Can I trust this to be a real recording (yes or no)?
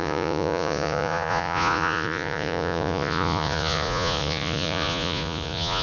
no